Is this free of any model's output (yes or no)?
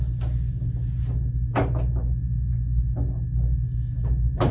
yes